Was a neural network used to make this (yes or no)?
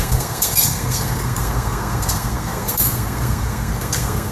yes